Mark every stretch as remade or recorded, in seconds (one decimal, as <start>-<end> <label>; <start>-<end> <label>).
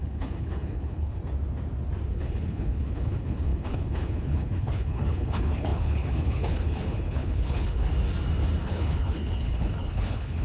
0.0-1.2 remade; 1.2-2.1 recorded; 2.1-7.9 remade; 7.9-8.6 recorded; 8.6-10.4 remade